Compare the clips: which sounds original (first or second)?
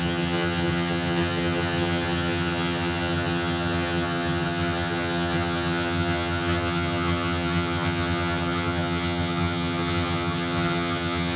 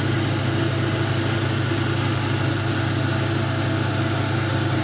second